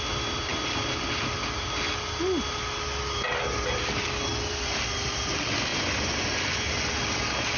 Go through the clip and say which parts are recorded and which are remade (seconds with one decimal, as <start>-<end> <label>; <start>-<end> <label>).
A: 0.0-5.7 recorded; 5.7-6.9 remade; 6.9-7.6 recorded